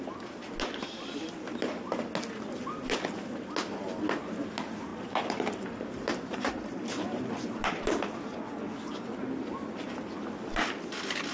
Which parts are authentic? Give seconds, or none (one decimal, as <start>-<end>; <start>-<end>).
0.0-4.9; 7.4-11.3